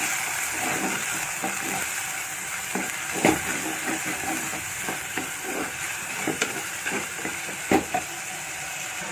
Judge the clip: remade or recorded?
remade